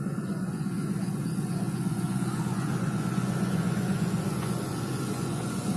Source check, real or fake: fake